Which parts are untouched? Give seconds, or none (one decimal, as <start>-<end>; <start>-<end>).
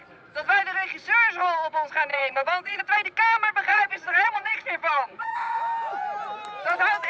0.0-2.1; 2.8-3.7; 5.6-7.1